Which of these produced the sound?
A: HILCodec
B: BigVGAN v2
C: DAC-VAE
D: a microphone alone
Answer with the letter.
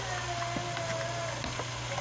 D